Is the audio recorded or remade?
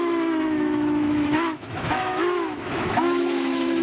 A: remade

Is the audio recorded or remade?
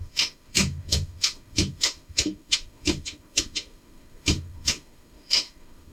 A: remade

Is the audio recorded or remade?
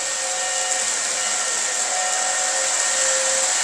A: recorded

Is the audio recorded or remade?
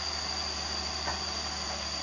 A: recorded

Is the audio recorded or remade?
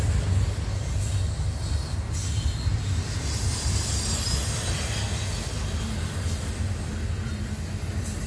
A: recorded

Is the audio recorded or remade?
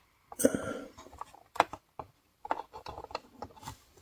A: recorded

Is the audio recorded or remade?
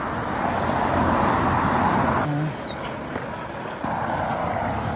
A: recorded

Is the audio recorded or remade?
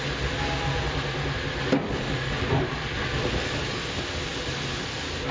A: recorded